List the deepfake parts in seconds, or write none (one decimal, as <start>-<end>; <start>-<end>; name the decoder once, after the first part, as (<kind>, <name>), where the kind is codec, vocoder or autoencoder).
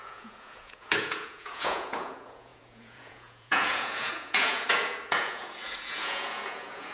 0.0-6.9 (vocoder, Vocos)